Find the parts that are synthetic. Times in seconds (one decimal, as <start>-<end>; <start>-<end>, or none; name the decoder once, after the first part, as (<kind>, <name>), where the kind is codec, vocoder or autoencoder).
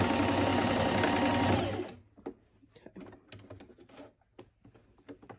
none